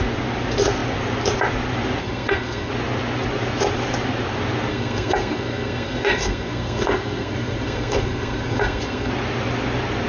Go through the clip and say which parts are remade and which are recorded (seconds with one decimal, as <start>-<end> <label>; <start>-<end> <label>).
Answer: 0.0-2.0 recorded; 2.0-2.7 remade; 2.7-4.7 recorded; 4.7-9.1 remade; 9.1-10.1 recorded